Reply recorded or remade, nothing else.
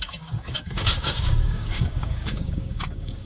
remade